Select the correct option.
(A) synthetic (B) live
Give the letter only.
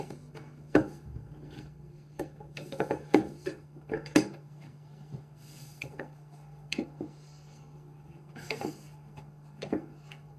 A